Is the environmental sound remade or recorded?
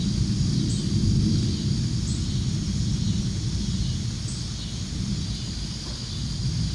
recorded